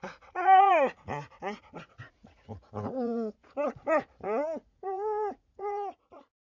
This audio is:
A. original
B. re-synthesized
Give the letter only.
B